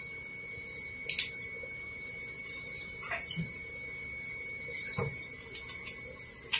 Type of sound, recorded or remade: recorded